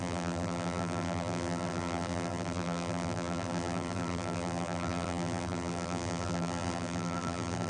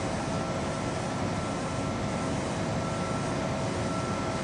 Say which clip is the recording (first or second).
second